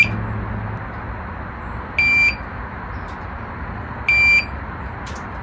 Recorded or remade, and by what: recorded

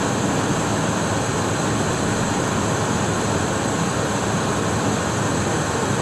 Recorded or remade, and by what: recorded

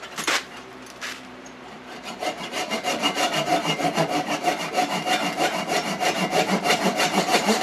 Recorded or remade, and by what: remade, vocoder, BigVGAN v2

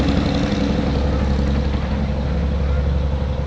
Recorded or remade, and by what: recorded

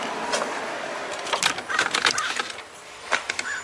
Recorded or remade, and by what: recorded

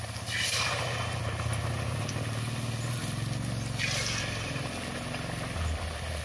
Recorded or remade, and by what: recorded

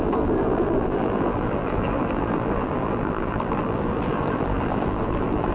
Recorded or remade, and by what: remade, vocoder, BigVGAN v2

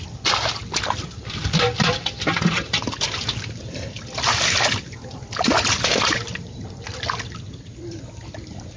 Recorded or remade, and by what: remade, vocoder, BigVGAN v2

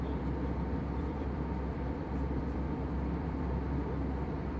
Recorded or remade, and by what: remade, vocoder, BigVGAN v2